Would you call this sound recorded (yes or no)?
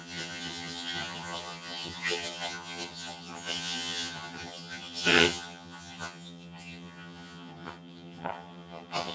no